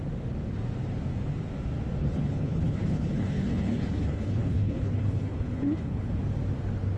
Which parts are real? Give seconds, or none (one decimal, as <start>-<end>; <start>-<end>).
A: 0.0-2.0; 6.2-7.0